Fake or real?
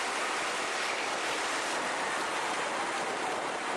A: fake